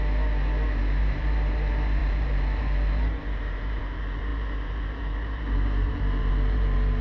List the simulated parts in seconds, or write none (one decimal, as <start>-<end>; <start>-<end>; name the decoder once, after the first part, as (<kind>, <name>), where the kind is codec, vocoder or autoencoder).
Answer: 1.0-7.0 (vocoder, BigVGAN v2)